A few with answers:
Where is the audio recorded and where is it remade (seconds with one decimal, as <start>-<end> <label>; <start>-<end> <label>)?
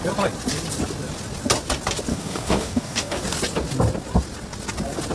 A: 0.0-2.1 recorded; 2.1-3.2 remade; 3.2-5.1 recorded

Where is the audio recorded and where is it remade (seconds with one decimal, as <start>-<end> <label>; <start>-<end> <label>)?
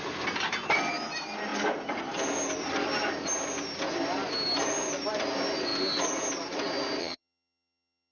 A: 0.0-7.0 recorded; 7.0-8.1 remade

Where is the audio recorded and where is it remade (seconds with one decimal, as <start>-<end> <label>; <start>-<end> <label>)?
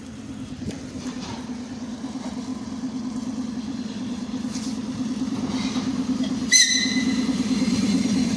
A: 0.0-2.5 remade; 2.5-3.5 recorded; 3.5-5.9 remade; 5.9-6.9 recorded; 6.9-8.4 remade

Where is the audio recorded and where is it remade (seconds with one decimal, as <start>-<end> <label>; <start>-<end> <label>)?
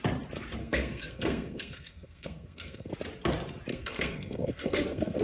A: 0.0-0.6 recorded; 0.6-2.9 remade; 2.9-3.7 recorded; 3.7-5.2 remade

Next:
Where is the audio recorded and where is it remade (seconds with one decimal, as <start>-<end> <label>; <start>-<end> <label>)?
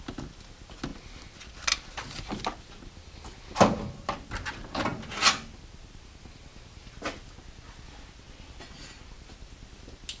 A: 0.0-10.2 recorded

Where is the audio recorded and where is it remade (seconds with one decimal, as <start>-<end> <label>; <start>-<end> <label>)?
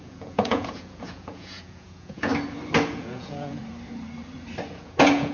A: 0.0-2.3 remade; 2.3-2.9 recorded; 2.9-3.6 remade; 3.6-4.7 recorded; 4.7-5.3 remade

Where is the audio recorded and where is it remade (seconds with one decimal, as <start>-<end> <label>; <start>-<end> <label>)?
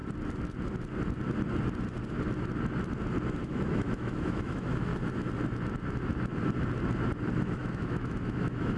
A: 0.0-3.4 recorded; 3.4-4.9 remade; 4.9-7.3 recorded; 7.3-8.8 remade